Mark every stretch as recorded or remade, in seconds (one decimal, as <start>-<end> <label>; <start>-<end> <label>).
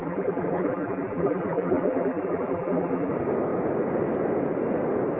0.0-3.1 remade; 3.1-5.2 recorded